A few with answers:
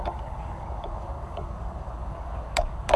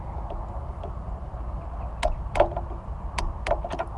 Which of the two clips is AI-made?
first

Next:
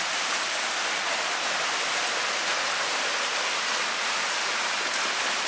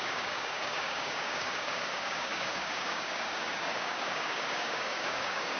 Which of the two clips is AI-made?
second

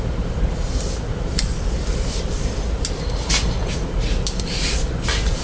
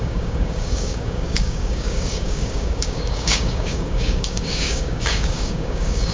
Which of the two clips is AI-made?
second